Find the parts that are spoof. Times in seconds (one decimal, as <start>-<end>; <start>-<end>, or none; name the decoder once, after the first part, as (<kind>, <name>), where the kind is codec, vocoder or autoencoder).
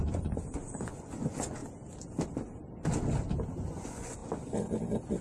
0.0-1.6 (vocoder, Vocos); 3.5-4.2